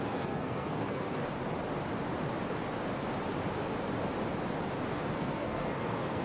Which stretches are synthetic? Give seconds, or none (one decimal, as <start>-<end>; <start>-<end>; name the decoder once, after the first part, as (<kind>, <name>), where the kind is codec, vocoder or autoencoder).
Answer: 0.0-1.2 (codec, SNAC); 4.9-6.2